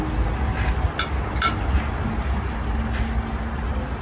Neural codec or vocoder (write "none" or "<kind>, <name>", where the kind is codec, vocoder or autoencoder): none